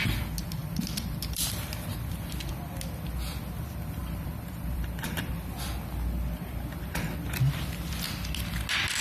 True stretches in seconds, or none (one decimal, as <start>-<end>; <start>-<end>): 0.0-0.6; 2.5-4.0; 5.8-9.0